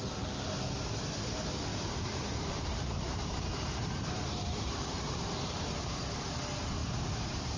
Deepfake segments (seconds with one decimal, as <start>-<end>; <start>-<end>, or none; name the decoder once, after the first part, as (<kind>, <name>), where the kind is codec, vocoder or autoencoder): 1.7-6.3 (vocoder, BigVGAN v2); 6.8-7.6

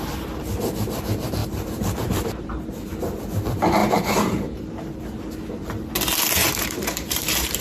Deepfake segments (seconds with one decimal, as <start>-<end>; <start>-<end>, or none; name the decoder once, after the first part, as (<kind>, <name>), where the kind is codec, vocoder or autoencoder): 3.8-5.0 (vocoder, BigVGAN v2); 6.4-7.6

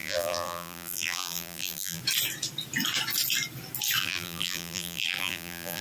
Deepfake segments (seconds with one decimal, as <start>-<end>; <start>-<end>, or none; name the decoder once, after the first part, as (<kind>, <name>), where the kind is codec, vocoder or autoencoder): 0.0-2.0 (vocoder, BigVGAN v2); 4.0-5.8

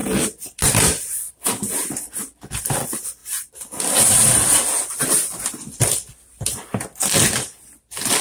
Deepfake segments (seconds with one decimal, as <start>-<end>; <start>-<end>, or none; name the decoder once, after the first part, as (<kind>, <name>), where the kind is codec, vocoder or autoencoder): 2.2-2.8 (vocoder, BigVGAN v2); 3.2-5.8

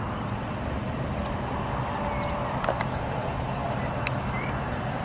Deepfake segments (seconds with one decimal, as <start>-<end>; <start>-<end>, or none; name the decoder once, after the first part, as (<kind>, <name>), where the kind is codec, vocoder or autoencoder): none

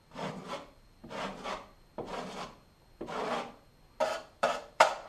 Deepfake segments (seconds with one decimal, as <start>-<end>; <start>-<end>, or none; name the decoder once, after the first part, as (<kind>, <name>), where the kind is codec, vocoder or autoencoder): 0.0-1.0 (vocoder, BigVGAN v2); 4.1-5.1